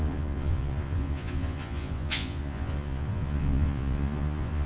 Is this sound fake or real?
fake